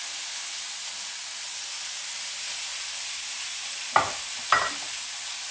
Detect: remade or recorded recorded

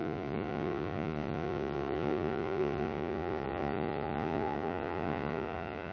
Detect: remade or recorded remade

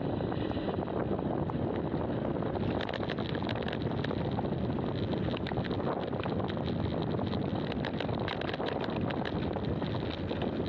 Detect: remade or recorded recorded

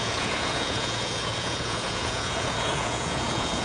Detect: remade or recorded remade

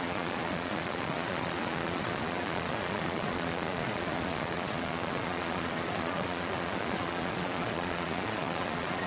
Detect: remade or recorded remade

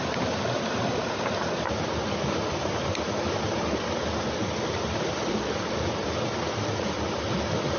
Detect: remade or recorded recorded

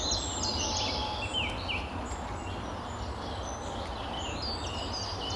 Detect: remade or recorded recorded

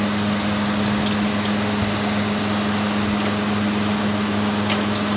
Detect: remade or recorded recorded